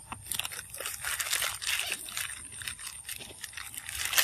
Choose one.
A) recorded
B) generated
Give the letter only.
A